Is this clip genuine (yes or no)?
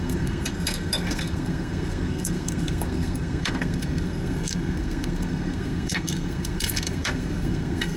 no